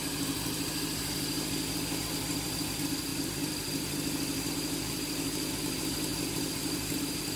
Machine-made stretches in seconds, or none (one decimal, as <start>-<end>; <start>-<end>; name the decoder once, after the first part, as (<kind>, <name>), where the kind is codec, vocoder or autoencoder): 6.1-7.0 (vocoder, BigVGAN v2)